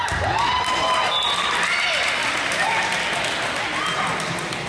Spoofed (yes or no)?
no